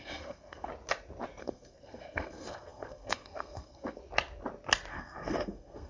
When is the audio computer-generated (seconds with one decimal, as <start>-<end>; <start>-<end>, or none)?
0.0-0.7; 1.4-4.0; 4.9-5.9